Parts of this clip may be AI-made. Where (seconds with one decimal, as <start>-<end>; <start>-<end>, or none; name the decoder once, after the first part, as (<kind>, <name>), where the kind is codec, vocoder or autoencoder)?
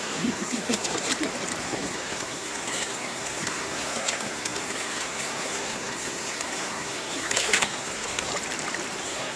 0.0-1.1 (codec, SNAC); 1.6-8.3; 9.0-9.4